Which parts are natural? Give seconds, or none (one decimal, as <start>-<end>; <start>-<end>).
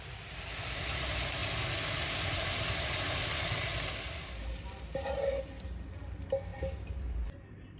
0.0-1.4; 2.9-6.5